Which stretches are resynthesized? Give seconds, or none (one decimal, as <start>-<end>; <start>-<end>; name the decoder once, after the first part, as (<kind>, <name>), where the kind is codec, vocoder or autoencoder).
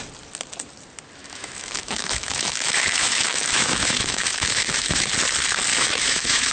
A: 1.2-5.1 (autoencoder, DAC-VAE); 5.7-6.5